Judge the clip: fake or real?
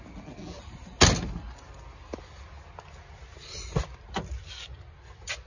real